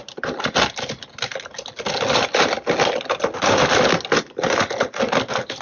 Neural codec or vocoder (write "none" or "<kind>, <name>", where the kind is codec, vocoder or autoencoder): none